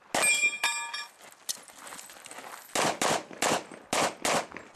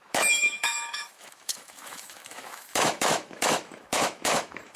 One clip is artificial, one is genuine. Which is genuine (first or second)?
first